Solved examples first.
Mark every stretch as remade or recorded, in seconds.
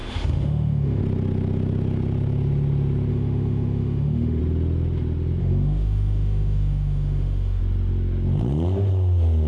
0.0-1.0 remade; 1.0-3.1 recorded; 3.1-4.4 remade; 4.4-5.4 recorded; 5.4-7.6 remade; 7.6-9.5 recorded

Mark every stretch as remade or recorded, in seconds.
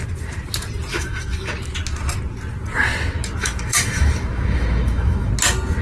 0.0-0.9 recorded; 0.9-1.5 remade; 1.5-3.4 recorded; 3.4-5.3 remade; 5.3-5.8 recorded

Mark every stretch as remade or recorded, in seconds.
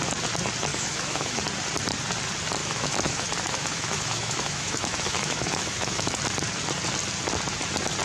0.0-0.7 recorded; 0.7-1.4 remade; 1.4-2.6 recorded; 2.6-6.2 remade; 6.2-8.0 recorded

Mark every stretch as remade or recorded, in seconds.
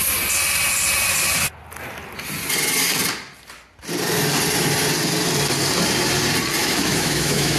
0.0-6.6 recorded; 6.6-7.6 remade